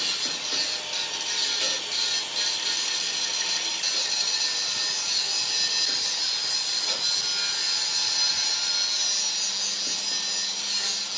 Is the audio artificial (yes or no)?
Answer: no